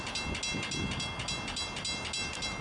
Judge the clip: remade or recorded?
recorded